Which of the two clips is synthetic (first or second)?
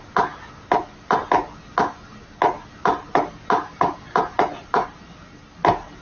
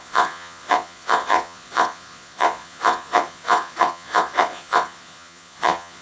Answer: second